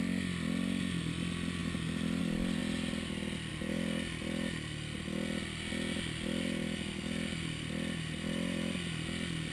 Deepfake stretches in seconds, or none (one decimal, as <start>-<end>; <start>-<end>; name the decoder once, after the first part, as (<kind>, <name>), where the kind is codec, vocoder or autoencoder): none